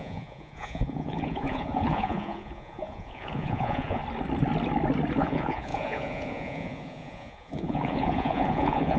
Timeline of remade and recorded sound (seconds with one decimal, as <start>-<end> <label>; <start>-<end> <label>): 0.0-4.0 remade; 4.0-5.2 recorded; 5.2-9.0 remade